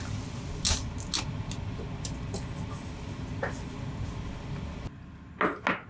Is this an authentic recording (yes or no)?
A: yes